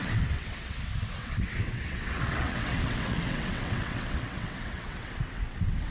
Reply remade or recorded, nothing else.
remade